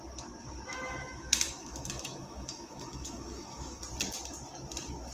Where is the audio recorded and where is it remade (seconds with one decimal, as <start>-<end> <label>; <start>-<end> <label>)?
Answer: 0.0-0.7 recorded; 0.7-3.8 remade; 3.8-5.1 recorded